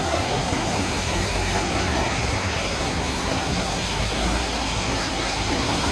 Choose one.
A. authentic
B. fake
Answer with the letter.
B